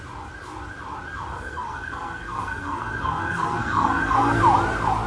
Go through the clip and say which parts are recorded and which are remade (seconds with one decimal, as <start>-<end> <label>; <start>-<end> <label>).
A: 0.0-1.3 recorded; 1.3-4.4 remade; 4.4-5.1 recorded